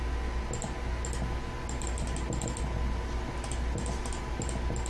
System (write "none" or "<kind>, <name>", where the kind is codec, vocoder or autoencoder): none